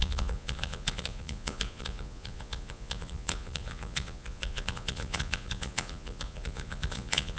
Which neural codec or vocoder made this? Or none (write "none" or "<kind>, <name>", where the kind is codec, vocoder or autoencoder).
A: vocoder, Vocos